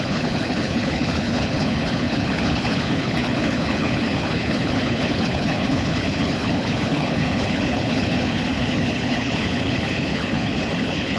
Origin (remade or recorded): remade